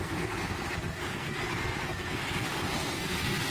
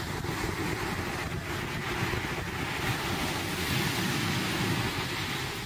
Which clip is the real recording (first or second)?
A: second